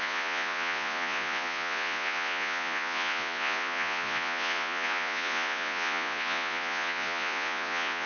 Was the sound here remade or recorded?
remade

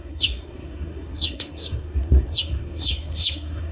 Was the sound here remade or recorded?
remade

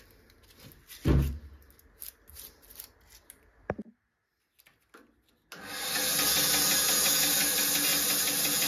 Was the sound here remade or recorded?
recorded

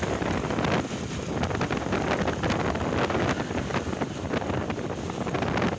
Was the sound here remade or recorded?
recorded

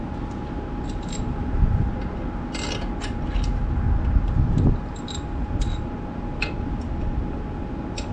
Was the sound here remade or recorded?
recorded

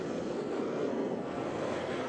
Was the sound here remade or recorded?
remade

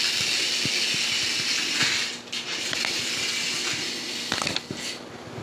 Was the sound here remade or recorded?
recorded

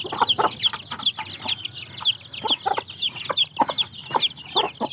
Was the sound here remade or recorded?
recorded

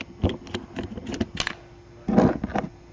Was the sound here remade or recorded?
recorded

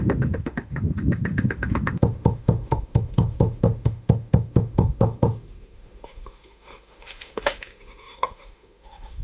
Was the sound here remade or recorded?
remade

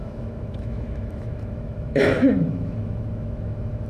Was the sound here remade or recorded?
remade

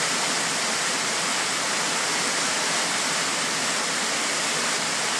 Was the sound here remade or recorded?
recorded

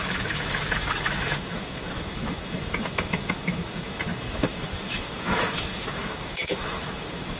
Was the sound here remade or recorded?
remade